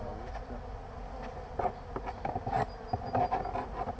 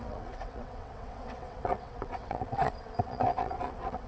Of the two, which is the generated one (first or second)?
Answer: second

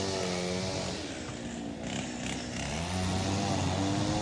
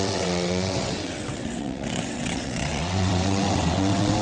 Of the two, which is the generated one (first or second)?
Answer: second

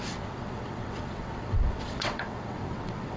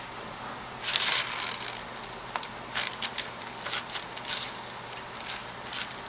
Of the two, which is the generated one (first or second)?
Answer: first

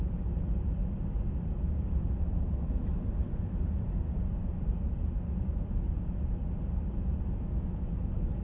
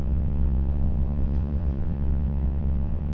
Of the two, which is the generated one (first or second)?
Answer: second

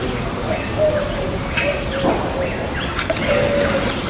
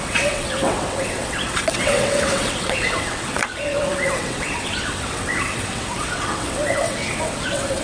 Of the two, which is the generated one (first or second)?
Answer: second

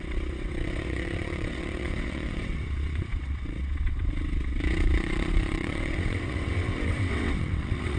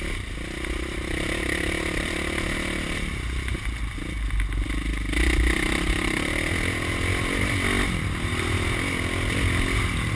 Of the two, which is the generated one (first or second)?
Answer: first